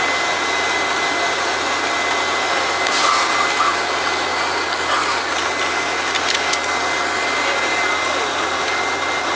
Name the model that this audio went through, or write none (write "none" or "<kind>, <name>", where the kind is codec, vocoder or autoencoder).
none